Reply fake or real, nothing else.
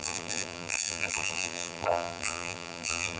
fake